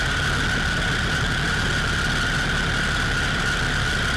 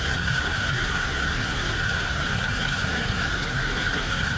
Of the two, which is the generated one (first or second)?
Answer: second